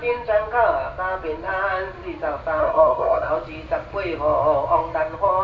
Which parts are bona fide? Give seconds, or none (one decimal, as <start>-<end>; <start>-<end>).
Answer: 0.0-2.6; 3.3-5.4